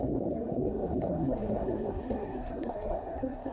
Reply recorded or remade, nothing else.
remade